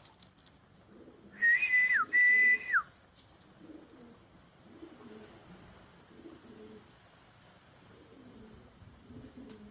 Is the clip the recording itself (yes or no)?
yes